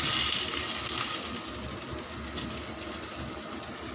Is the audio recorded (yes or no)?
yes